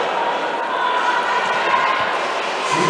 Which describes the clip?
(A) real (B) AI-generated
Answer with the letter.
A